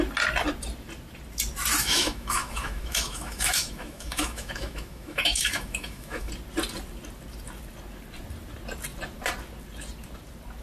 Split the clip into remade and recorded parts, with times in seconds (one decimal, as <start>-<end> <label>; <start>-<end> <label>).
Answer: 0.0-1.8 recorded; 1.8-6.3 remade; 6.3-10.6 recorded